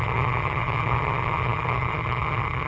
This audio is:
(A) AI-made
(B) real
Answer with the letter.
A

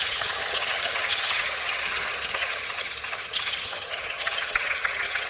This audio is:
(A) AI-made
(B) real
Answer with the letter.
A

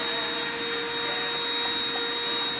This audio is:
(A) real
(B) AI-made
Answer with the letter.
A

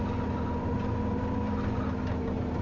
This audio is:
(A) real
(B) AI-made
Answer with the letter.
A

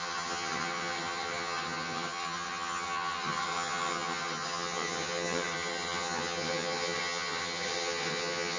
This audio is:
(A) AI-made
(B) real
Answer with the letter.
A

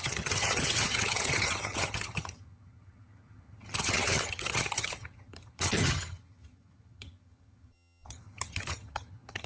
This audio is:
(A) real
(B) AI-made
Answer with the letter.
B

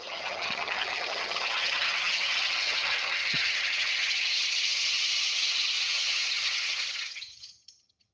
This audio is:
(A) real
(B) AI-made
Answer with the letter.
B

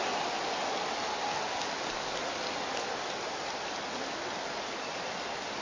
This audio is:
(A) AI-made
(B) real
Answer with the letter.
B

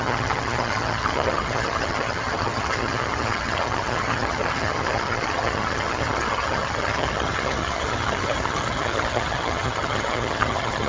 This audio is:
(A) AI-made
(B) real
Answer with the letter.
A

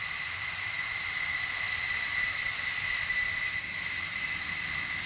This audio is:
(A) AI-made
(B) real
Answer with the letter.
B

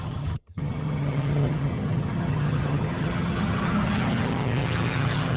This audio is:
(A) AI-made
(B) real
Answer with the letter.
A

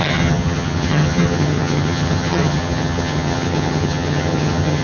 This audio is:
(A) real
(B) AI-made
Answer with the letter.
B